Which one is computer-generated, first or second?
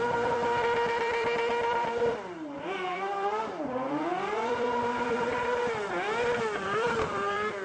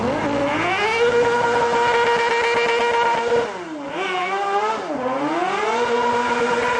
first